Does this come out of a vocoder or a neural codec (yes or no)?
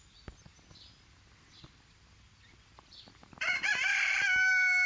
no